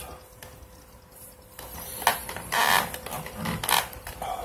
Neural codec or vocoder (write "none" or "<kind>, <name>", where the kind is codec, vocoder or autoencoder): none